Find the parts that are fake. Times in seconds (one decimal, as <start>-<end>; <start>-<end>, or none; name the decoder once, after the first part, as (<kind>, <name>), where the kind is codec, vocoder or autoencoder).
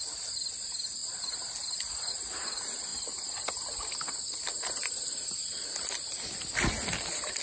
none